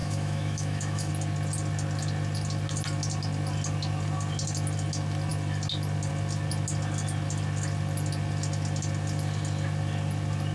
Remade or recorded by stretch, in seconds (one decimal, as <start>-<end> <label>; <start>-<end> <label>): 0.0-1.1 remade; 1.1-10.5 recorded